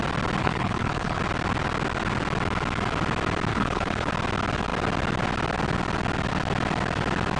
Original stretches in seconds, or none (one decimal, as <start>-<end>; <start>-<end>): 0.0-0.4; 1.2-3.5; 4.1-7.4